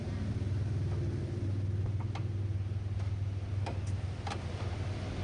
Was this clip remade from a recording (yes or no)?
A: no